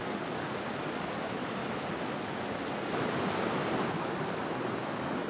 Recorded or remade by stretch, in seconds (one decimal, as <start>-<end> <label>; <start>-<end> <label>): 0.0-1.2 recorded; 1.2-1.6 remade; 1.6-4.8 recorded; 4.8-5.3 remade